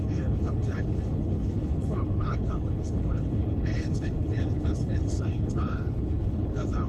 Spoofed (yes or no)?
yes